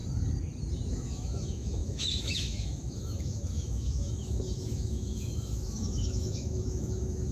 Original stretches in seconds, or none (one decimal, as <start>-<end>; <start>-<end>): 0.0-0.9